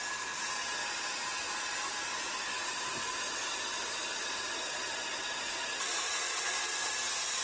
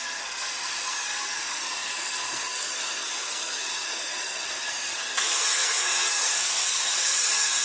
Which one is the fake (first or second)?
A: second